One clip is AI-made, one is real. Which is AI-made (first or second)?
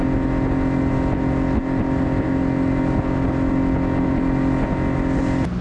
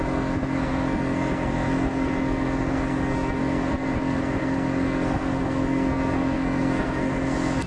second